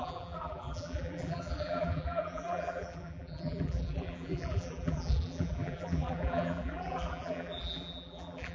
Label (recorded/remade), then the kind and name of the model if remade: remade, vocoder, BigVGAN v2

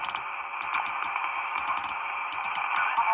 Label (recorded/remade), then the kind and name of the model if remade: recorded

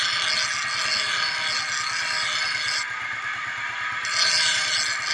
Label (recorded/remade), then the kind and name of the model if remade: recorded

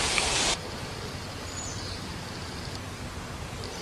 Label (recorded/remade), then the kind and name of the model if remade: remade, vocoder, BigVGAN v2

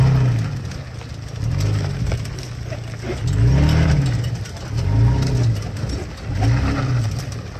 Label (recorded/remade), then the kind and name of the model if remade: recorded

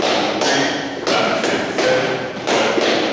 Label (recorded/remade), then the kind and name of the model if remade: recorded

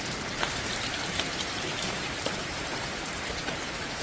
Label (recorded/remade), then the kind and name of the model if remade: remade, vocoder, BigVGAN v2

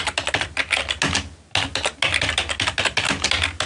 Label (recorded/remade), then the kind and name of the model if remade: recorded